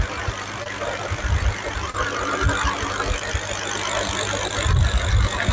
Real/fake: real